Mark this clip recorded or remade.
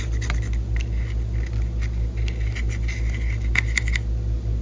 recorded